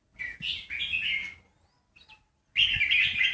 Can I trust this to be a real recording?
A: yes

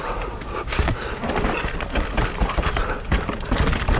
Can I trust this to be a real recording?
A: yes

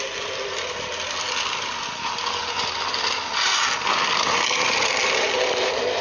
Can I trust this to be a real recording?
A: yes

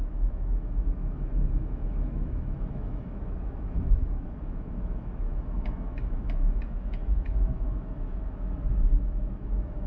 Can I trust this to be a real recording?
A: no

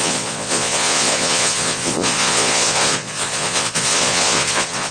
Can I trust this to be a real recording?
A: no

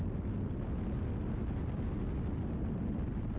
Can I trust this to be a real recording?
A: yes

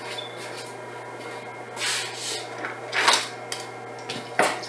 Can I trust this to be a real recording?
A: yes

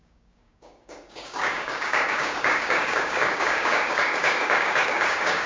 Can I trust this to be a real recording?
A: no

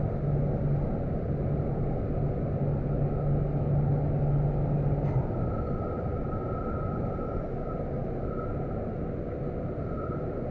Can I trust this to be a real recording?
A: yes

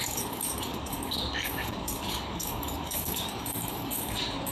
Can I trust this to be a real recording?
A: no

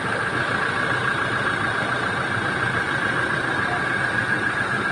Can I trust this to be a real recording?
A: yes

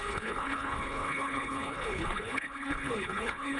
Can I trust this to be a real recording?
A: no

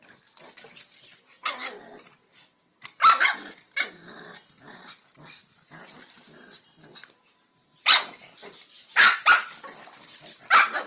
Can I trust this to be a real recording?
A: no